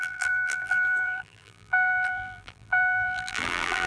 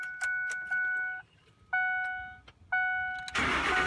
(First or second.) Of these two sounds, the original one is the second